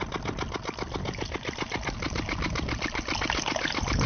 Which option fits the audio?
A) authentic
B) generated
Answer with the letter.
A